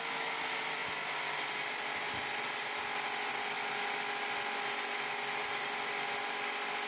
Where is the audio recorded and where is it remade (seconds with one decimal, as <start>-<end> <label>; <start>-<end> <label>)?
0.0-6.9 recorded